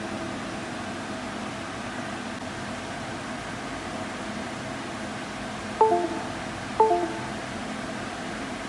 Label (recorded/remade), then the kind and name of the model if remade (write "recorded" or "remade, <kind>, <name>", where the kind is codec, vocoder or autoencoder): recorded